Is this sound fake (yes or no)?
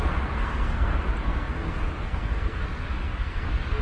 yes